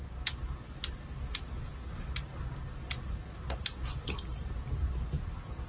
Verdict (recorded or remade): recorded